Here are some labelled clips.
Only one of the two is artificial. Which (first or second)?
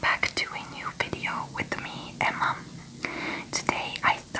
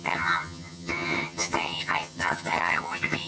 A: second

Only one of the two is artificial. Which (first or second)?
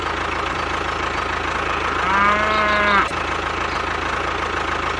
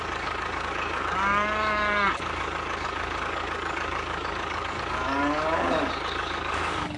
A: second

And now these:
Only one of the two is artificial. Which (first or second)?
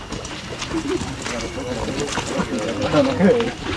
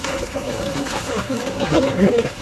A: second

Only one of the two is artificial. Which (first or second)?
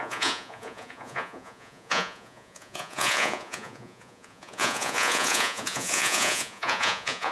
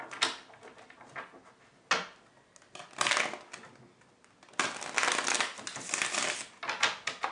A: first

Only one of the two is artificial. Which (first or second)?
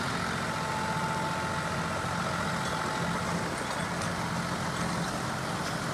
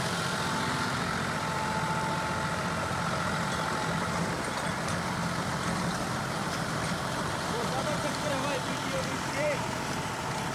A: second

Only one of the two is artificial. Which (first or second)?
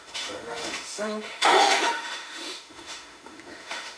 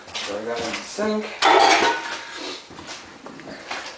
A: first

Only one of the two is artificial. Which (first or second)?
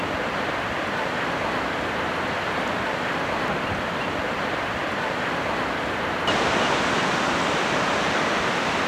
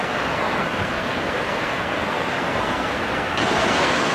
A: second